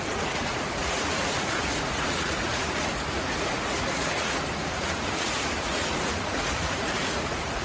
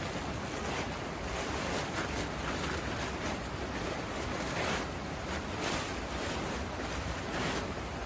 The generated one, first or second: first